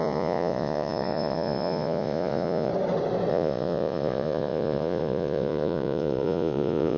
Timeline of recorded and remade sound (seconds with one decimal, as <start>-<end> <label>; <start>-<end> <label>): 0.0-2.7 remade; 2.7-3.3 recorded; 3.3-7.0 remade